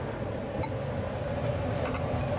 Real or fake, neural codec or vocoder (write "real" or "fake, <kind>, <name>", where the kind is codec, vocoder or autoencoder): real